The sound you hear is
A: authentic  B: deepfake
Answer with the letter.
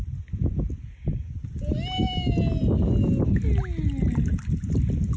A